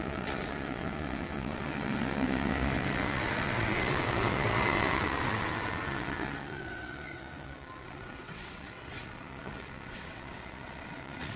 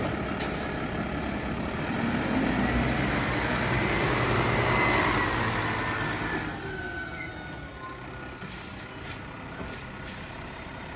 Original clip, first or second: second